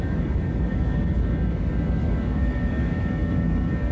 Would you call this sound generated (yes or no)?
yes